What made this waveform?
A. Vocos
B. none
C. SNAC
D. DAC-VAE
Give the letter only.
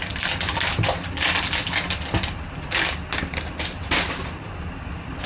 B